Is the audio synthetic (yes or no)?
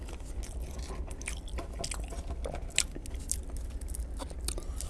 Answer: no